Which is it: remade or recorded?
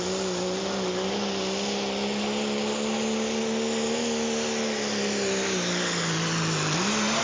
recorded